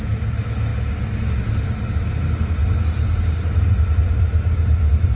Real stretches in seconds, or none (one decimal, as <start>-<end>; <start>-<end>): 0.0-5.2